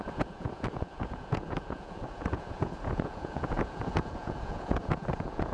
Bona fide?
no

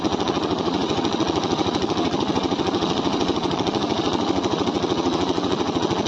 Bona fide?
no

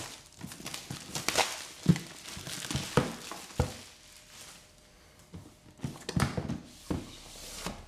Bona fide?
yes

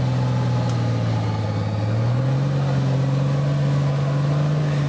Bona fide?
yes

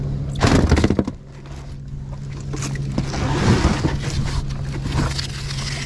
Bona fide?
yes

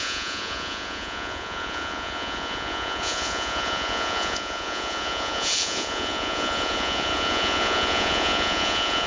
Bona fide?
no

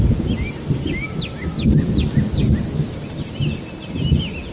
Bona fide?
yes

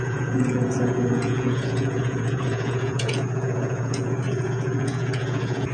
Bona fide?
no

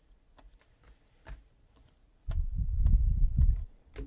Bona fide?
yes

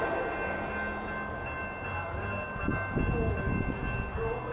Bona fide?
yes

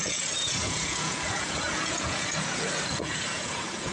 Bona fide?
no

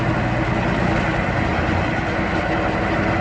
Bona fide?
yes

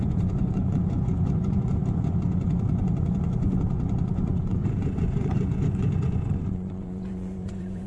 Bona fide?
no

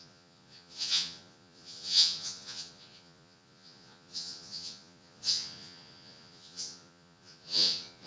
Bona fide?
no